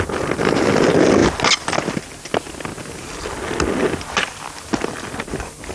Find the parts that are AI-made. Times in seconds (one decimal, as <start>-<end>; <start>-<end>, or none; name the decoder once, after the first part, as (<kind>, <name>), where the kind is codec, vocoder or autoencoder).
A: none